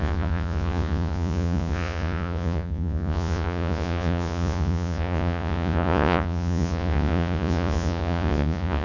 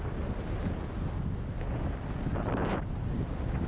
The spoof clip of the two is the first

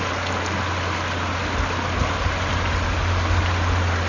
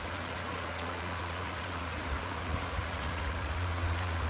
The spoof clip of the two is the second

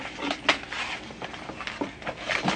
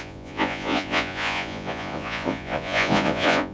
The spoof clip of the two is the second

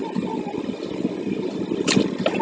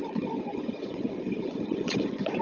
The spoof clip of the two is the second